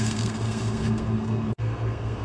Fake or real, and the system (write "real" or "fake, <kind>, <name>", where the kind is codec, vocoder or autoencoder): fake, codec, SNAC